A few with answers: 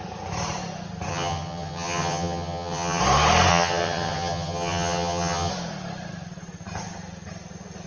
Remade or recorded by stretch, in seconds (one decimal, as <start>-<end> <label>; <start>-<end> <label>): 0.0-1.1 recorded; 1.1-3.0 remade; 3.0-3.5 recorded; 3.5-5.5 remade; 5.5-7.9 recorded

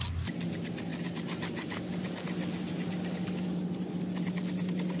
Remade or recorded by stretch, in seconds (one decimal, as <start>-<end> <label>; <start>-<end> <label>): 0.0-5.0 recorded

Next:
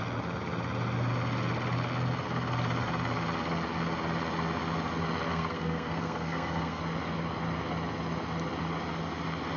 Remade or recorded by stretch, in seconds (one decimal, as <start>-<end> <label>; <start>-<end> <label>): 0.0-5.3 recorded; 5.3-6.8 remade; 6.8-9.6 recorded

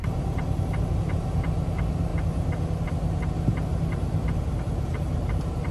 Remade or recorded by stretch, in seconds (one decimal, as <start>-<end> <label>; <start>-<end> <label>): 0.0-2.1 remade; 2.1-4.6 recorded; 4.6-5.7 remade

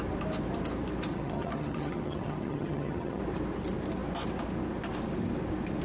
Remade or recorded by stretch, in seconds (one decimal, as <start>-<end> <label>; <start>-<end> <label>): 0.0-1.1 recorded; 1.1-3.2 remade; 3.2-5.8 recorded